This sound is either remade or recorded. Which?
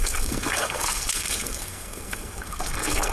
remade